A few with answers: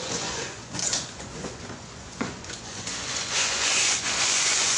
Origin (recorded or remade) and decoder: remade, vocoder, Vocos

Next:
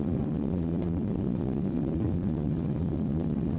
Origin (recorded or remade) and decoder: remade, vocoder, Vocos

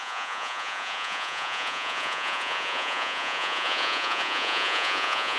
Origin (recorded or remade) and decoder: remade, vocoder, Vocos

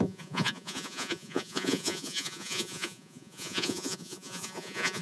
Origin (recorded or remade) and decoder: remade, vocoder, Vocos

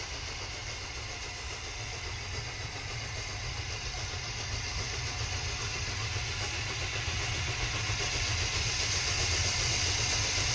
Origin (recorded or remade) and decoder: recorded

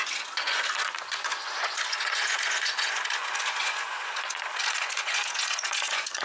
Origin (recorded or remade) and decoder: remade, vocoder, Vocos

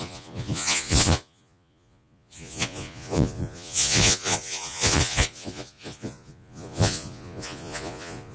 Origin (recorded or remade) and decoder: remade, vocoder, Vocos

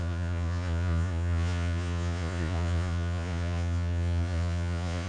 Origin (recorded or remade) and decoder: remade, vocoder, Vocos